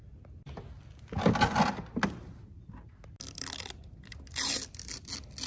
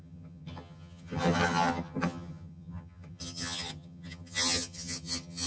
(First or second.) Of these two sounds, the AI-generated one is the second